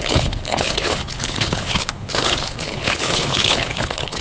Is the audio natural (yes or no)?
no